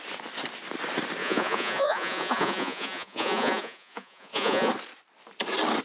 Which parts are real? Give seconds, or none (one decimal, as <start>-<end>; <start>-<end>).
0.0-1.2; 4.7-5.8